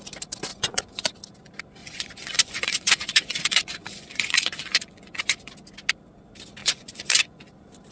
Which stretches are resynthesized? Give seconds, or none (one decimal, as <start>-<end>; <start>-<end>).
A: 0.5-1.1; 1.8-5.5; 6.6-7.4